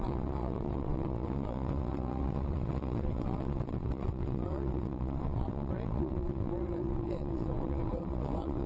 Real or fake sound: fake